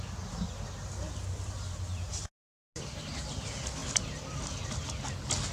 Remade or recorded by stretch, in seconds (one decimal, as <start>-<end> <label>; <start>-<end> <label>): 0.0-5.5 recorded